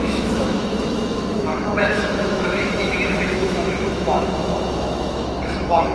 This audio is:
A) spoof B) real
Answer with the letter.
A